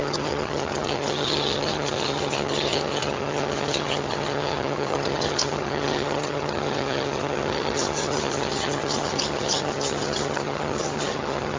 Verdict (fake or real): fake